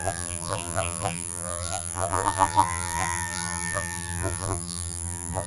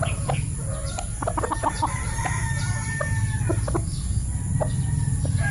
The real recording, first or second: second